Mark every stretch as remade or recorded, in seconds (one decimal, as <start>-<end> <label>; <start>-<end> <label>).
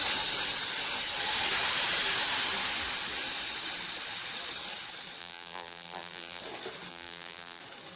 0.0-5.2 recorded; 5.2-6.4 remade; 6.4-6.9 recorded; 6.9-7.6 remade; 7.6-8.0 recorded